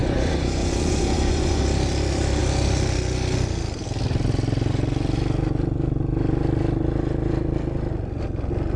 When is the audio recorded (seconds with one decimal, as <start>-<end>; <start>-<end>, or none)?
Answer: 1.6-8.8